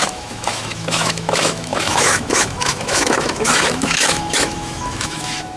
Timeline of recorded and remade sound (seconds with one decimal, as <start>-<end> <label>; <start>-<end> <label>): 0.0-5.6 remade